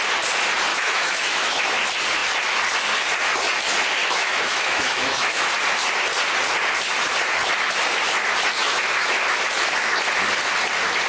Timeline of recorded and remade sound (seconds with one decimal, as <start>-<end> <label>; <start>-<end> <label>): 0.0-0.7 recorded; 0.7-1.8 remade; 1.8-4.0 recorded; 4.0-5.5 remade; 5.5-8.6 recorded; 8.6-9.2 remade; 9.2-11.1 recorded